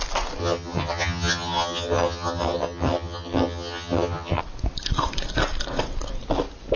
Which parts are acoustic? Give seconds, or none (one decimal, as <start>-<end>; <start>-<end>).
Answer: 0.0-0.4; 4.4-6.8